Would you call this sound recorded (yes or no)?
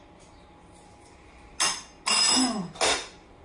yes